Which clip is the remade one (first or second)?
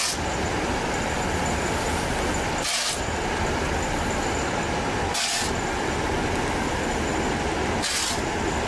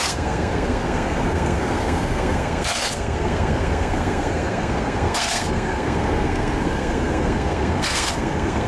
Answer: second